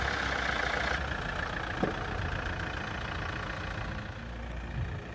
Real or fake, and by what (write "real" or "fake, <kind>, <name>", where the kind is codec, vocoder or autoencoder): real